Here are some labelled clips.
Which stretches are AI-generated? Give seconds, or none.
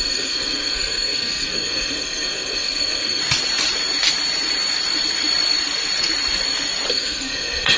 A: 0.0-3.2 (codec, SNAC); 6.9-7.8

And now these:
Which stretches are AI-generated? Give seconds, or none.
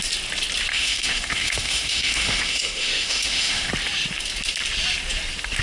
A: 0.7-3.7 (autoencoder, DAC-VAE)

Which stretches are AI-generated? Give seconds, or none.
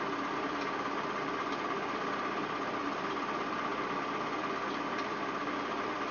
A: none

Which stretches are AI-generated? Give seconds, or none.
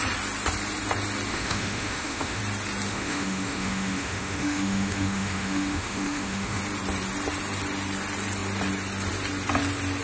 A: 1.3-2.4 (autoencoder, DAC-VAE); 2.9-6.6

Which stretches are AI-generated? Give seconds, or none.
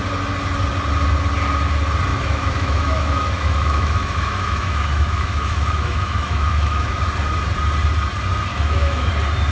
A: 2.1-7.0 (autoencoder, DAC-VAE); 8.5-9.1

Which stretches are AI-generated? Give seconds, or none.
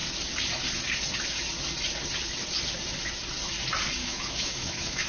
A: 4.0-5.1 (autoencoder, DAC-VAE)